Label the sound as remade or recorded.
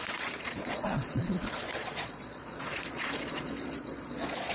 remade